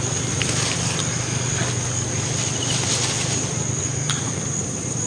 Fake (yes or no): no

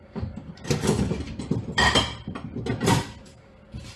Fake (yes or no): no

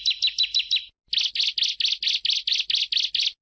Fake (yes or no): no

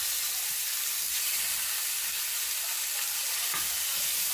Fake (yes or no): yes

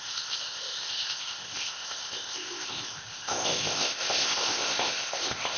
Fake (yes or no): yes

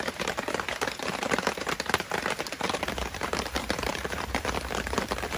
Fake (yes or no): yes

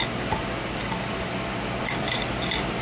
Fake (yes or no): no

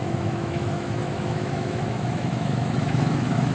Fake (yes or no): yes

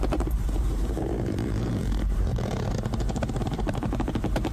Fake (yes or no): yes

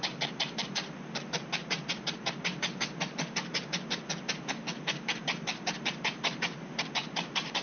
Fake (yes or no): no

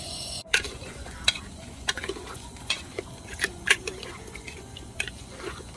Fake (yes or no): yes